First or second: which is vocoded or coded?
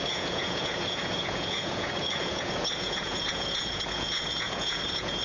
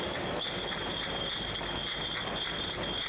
first